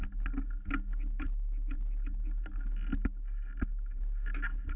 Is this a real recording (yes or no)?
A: yes